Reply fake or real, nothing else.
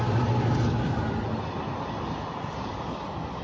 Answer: real